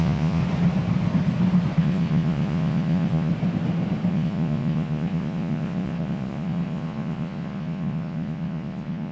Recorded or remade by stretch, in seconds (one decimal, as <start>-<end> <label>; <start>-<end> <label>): 0.0-0.4 remade; 0.4-1.8 recorded; 1.8-3.3 remade; 3.3-4.1 recorded; 4.1-9.1 remade